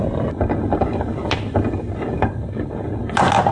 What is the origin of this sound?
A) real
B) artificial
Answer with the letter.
A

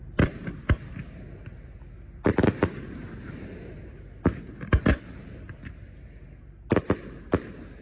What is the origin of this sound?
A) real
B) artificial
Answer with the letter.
A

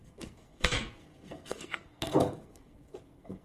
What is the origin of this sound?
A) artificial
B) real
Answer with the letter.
A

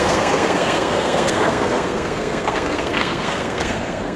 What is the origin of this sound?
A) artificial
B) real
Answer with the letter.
A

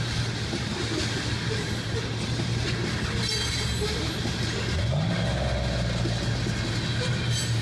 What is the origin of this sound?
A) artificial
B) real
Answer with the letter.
B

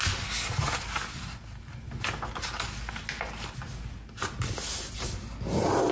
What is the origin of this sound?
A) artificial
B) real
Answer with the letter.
B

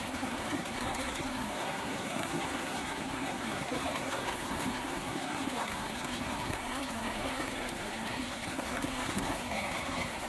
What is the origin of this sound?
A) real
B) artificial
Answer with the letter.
B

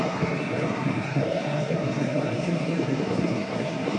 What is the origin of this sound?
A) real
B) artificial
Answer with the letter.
B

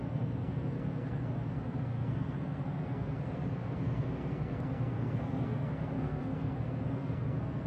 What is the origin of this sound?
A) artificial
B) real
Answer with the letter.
A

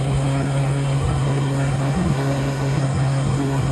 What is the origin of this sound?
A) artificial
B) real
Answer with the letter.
A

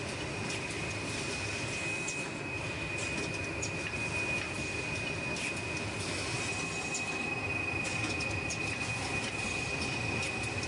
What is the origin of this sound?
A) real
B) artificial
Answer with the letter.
A